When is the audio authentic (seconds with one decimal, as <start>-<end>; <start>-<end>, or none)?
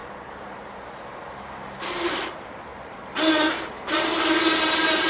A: 0.0-0.5; 2.7-5.1